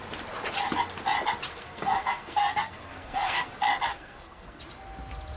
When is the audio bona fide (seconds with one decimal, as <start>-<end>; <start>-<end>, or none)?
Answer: 0.0-1.5; 3.5-3.9; 4.6-5.4